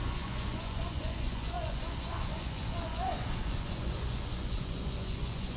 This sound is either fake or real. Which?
fake